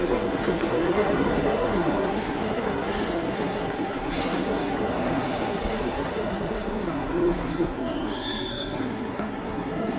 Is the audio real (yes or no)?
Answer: no